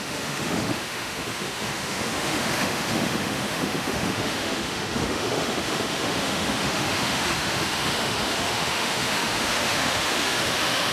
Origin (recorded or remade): remade